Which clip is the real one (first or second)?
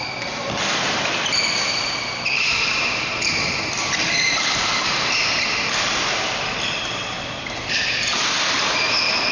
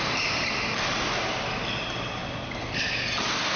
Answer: second